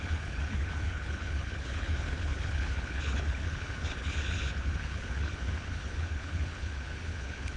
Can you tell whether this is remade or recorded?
remade